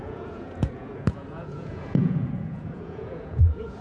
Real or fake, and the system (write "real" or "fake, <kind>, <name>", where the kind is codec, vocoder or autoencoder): fake, vocoder, Vocos